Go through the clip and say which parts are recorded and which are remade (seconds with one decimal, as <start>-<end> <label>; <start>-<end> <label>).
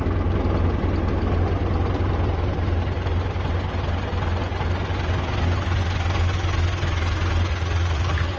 0.0-7.5 recorded; 7.5-8.4 remade